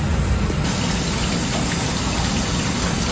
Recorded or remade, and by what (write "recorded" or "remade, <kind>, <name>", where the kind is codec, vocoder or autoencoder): recorded